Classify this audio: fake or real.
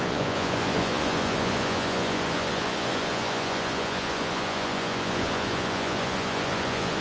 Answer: fake